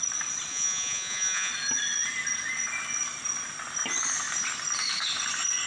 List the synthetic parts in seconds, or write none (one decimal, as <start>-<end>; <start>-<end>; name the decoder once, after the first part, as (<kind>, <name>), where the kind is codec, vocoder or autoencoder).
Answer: 0.5-1.5 (vocoder, Vocos)